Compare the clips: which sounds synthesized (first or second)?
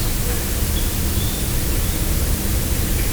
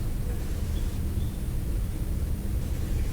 first